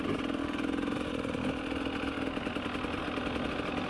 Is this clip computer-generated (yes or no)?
no